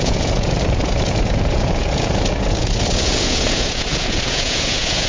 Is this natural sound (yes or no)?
no